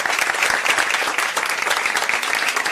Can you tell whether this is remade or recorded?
recorded